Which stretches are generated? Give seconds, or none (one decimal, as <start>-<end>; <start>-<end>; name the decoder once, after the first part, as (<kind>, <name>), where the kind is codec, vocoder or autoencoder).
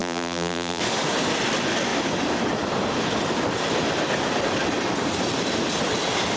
0.0-0.8 (vocoder, BigVGAN v2)